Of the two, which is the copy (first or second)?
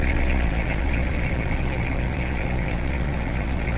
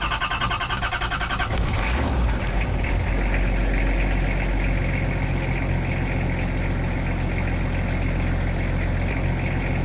first